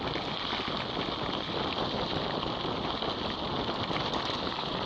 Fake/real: real